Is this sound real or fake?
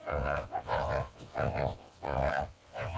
fake